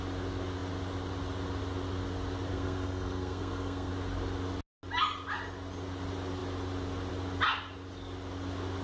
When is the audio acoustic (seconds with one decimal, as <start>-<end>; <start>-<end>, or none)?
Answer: 0.0-2.5; 3.9-8.8